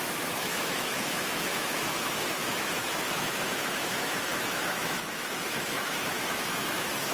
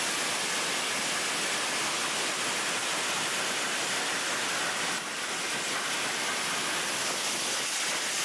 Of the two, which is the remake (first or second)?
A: first